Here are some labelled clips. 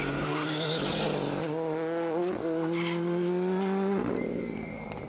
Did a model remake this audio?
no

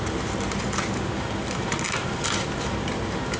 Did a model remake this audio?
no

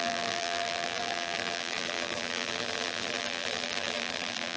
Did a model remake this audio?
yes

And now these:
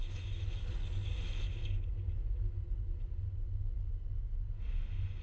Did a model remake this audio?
no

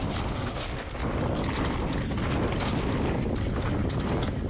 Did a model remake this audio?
no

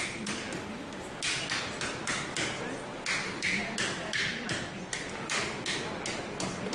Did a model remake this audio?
no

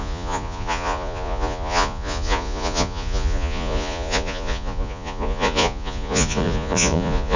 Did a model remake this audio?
yes